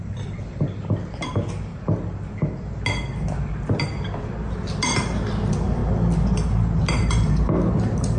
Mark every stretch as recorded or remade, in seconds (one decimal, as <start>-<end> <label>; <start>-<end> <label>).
0.0-8.2 recorded